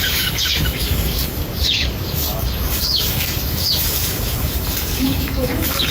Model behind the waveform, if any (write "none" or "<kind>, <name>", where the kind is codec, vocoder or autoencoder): codec, DAC